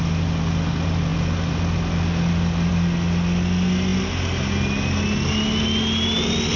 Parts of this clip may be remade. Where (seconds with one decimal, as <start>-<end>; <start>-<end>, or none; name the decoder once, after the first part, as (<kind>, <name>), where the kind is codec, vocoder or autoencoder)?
none